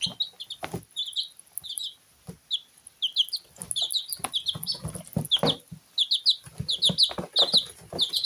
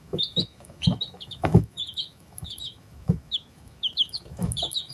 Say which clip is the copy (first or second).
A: second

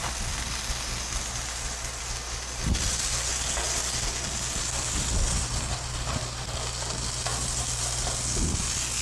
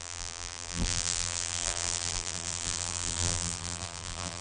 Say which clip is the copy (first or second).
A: second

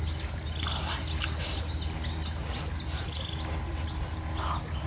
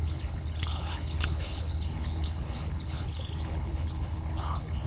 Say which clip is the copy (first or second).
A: second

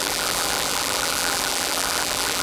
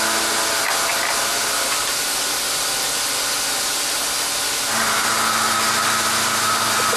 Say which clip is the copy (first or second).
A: first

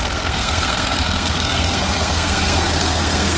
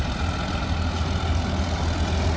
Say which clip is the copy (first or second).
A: first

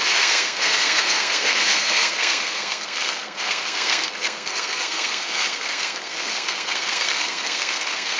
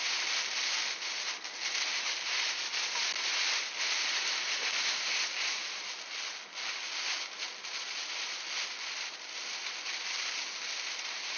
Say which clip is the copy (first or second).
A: first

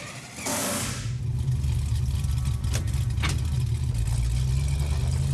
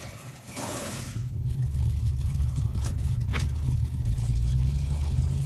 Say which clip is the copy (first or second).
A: second